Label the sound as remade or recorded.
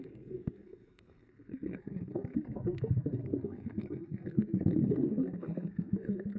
remade